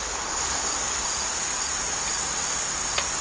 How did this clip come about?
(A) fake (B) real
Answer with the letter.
B